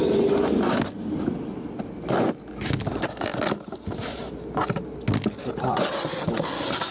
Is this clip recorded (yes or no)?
yes